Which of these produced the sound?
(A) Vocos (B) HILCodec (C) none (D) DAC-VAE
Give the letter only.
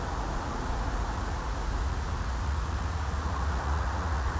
A